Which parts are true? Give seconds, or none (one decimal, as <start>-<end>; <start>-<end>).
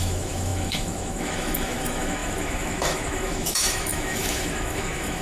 none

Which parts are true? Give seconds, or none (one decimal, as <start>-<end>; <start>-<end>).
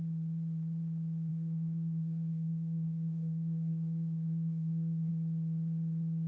0.0-1.3; 5.1-6.3